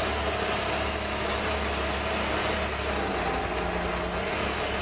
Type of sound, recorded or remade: recorded